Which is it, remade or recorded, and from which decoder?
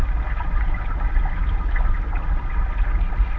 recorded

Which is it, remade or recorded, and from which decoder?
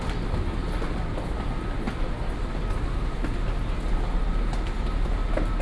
recorded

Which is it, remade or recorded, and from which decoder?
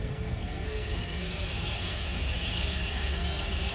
remade, codec, SNAC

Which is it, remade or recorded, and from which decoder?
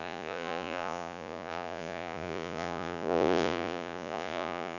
remade, vocoder, Vocos